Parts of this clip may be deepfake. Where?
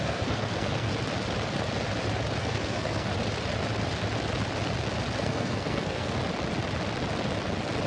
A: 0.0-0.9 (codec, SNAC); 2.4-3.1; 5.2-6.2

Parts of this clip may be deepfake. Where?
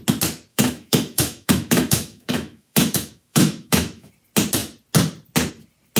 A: 0.5-4.1 (autoencoder, DAC-VAE)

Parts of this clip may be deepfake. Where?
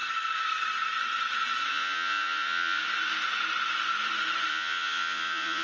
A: 1.7-2.8 (vocoder, Vocos); 4.5-5.6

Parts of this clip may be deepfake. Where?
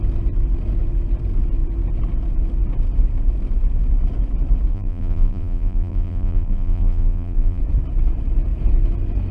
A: 4.7-7.6 (vocoder, BigVGAN v2)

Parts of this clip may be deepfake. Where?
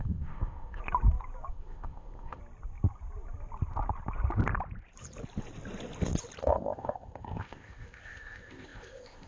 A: 0.0-0.8 (codec, ZipCodec); 1.5-2.4; 6.4-9.3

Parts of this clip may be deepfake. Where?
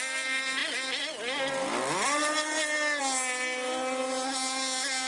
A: none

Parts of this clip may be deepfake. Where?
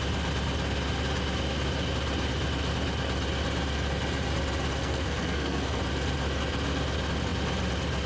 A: 4.8-5.8 (codec, SNAC)